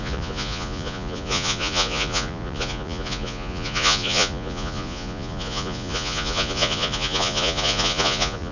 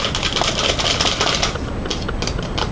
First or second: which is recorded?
second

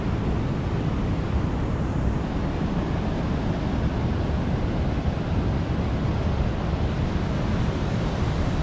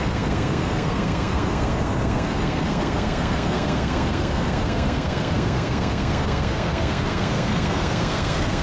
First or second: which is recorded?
first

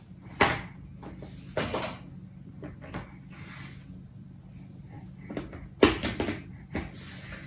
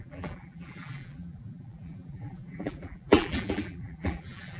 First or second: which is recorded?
first